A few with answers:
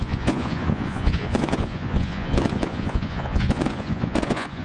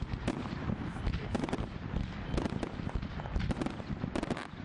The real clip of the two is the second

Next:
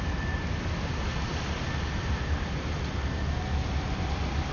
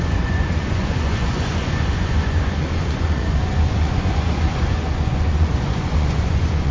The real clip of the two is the first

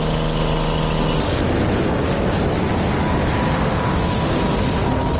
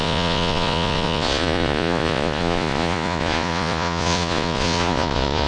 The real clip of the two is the first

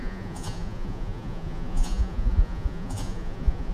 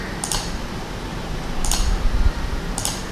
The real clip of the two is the second